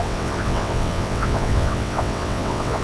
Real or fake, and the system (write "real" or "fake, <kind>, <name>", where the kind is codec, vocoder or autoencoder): fake, vocoder, WaveNeXt